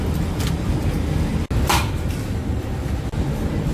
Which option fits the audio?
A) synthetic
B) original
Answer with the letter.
B